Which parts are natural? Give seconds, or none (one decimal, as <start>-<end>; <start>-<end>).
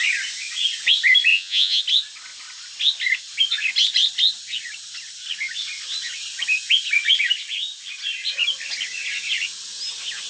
0.0-1.3; 1.8-10.3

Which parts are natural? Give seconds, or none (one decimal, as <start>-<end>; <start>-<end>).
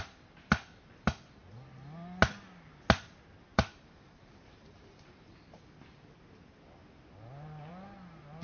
0.0-3.5; 5.3-8.4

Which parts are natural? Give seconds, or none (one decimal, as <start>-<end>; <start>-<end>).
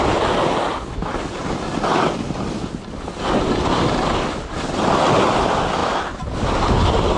0.0-7.2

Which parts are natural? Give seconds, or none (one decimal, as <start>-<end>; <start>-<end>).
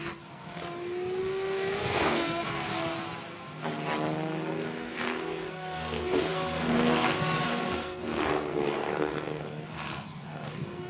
0.6-1.2; 2.7-4.5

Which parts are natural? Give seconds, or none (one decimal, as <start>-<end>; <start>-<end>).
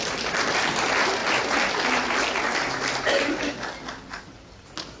0.0-5.0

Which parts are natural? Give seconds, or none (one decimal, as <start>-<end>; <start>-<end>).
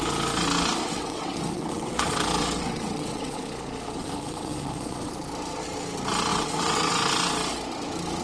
0.0-0.8; 3.4-4.0; 5.1-6.3; 6.9-8.2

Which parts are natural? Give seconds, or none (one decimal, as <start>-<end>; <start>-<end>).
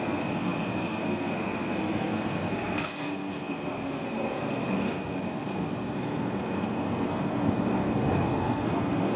none